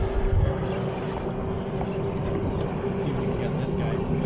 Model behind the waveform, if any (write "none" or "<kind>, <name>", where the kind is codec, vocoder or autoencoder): none